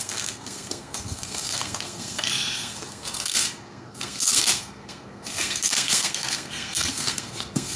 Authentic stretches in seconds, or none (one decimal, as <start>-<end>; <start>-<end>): none